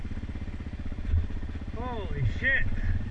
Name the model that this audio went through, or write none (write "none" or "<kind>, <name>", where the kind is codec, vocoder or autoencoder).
none